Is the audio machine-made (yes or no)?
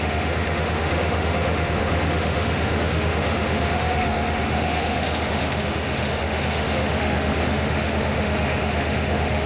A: yes